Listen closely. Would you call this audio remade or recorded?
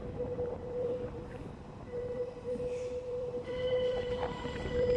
remade